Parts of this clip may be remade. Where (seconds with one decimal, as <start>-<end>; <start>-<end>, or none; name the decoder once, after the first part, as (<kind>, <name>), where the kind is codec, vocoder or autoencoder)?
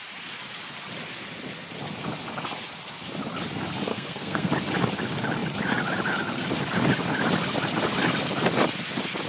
3.9-4.5 (codec, SNAC)